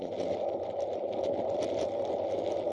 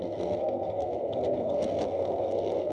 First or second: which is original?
first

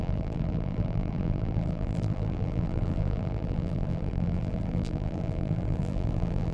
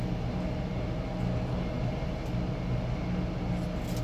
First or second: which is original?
second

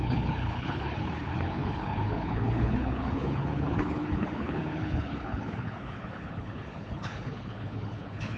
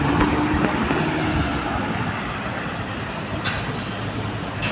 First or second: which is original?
second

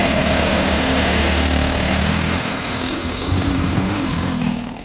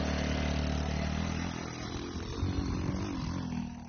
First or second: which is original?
second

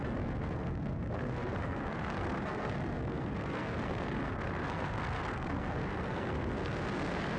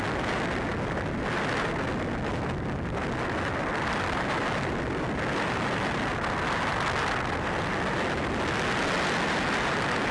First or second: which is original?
second